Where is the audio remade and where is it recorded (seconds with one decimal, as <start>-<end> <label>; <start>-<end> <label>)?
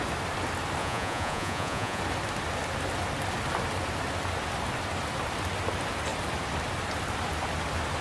0.0-0.8 recorded; 0.8-2.0 remade; 2.0-8.0 recorded